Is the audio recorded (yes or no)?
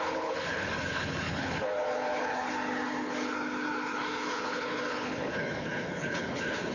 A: no